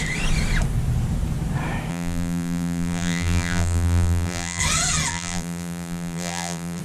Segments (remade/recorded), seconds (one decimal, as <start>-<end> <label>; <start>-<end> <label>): 0.0-1.9 recorded; 1.9-4.6 remade; 4.6-5.1 recorded; 5.1-6.8 remade